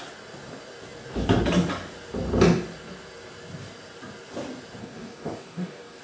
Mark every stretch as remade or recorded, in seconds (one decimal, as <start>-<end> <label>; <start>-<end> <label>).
0.0-4.8 recorded; 4.8-6.0 remade